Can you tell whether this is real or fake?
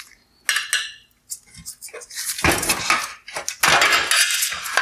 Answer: real